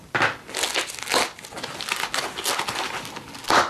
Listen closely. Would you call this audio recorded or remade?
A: recorded